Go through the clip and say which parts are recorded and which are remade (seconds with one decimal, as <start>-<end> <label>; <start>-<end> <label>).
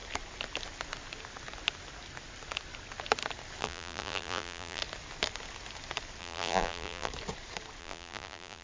0.0-3.6 recorded; 3.6-4.8 remade; 4.8-6.2 recorded; 6.2-7.1 remade; 7.1-7.8 recorded; 7.8-8.6 remade